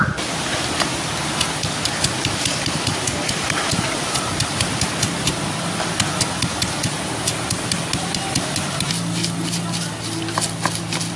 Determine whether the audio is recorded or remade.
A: recorded